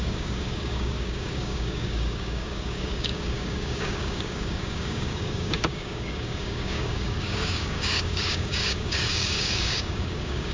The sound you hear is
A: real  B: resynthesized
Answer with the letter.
B